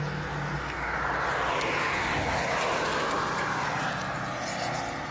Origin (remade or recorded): recorded